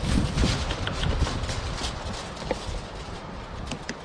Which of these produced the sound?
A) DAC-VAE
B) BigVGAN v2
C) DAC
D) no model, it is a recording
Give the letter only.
D